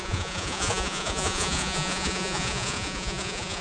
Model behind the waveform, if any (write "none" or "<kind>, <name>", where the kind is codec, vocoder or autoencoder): vocoder, Vocos